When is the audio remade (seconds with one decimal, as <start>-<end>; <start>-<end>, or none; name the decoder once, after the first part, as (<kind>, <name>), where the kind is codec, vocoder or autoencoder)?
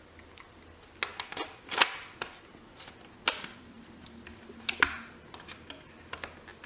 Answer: none